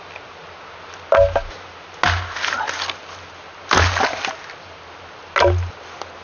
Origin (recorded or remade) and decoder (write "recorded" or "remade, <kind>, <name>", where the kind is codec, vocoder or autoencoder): recorded